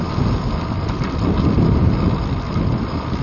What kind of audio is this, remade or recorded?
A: recorded